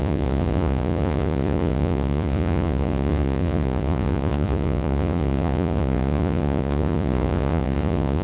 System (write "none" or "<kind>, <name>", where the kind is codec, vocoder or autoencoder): vocoder, Vocos